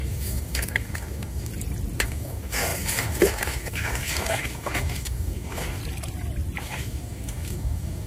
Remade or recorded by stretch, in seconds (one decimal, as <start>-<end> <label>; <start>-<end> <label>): 0.0-1.5 remade; 1.5-2.0 recorded; 2.0-5.8 remade; 5.8-6.6 recorded; 6.6-8.1 remade